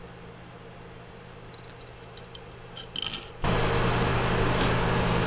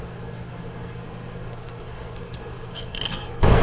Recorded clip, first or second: first